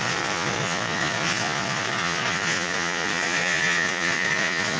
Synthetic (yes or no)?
yes